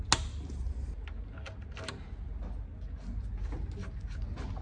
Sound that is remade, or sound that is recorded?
recorded